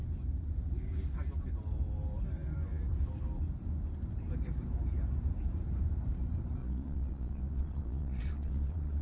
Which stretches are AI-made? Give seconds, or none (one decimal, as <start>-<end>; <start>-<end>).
6.6-9.0